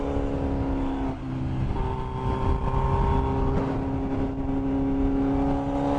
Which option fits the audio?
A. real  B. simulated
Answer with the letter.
A